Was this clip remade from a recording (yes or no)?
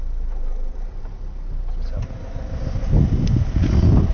no